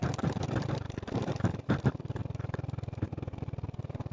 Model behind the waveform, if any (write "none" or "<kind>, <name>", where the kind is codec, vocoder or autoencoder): vocoder, BigVGAN v2